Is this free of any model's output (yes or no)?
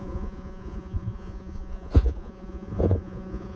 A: no